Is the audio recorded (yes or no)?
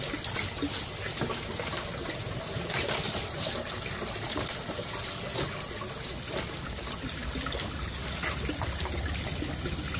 yes